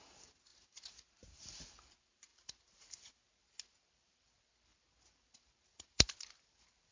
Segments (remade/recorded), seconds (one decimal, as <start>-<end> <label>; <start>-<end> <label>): 0.0-6.9 recorded